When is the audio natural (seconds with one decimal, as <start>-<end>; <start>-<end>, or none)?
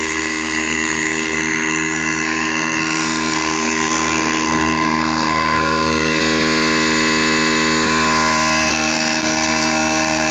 6.2-8.7